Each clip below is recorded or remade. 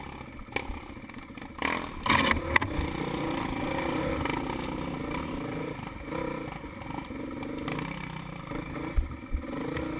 recorded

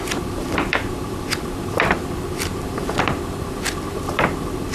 remade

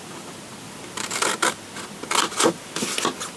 recorded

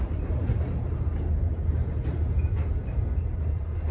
recorded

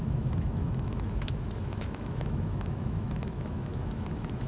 remade